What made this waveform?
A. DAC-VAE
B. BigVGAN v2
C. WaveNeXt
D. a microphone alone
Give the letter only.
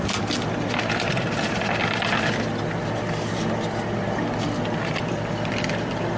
D